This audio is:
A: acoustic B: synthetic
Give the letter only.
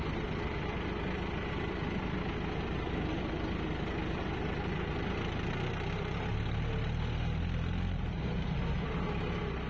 A